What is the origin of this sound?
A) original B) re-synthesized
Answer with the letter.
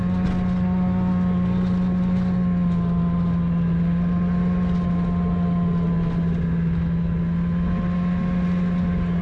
A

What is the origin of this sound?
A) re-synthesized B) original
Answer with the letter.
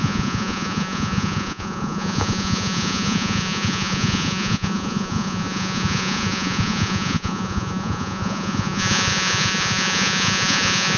A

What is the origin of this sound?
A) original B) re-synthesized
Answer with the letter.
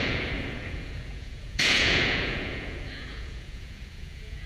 B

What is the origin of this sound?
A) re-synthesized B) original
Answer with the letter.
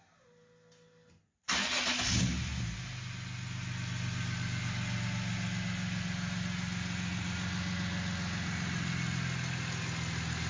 B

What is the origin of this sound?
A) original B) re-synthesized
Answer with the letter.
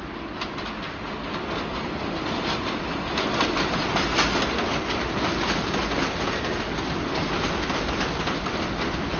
A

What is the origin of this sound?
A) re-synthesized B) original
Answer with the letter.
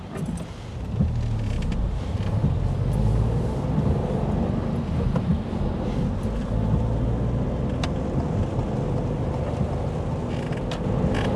B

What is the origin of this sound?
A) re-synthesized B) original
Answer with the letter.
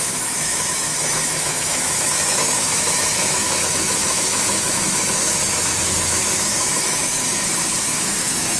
A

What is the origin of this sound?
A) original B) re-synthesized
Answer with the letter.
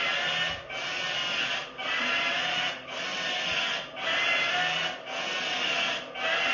A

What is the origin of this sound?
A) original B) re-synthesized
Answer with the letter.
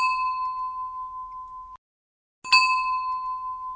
A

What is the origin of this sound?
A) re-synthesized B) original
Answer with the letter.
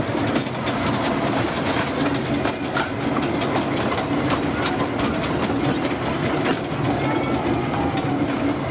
B